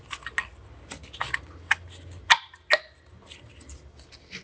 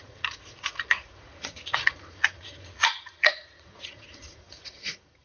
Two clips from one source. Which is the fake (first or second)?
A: second